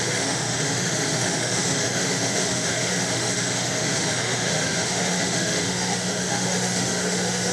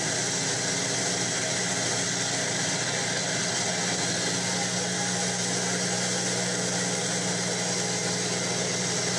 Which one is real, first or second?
second